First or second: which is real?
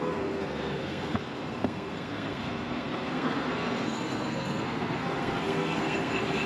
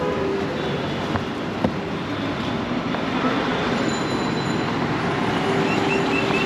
second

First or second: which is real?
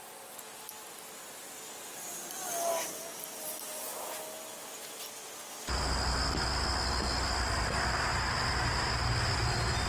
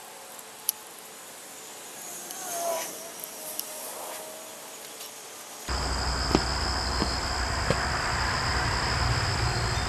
first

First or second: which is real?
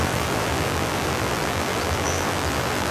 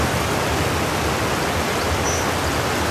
second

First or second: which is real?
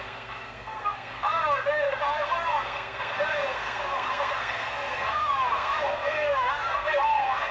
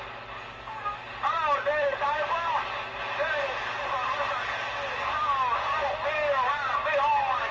second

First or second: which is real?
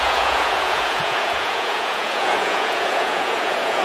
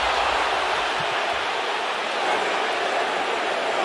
second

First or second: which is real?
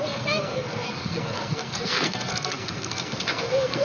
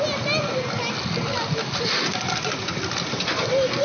second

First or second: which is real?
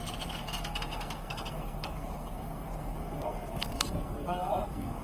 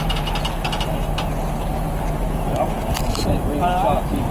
second